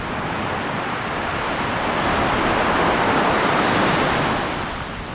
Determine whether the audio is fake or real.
real